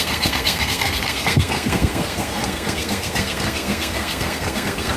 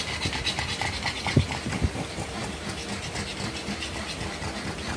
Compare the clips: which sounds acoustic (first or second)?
second